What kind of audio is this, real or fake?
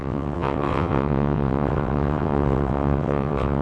fake